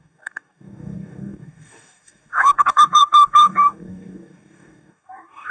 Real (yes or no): no